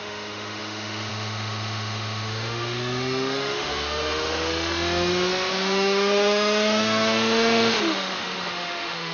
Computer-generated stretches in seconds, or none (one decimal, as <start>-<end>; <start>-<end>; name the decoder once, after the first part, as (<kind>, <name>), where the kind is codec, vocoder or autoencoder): 0.0-9.1 (autoencoder, DAC-VAE)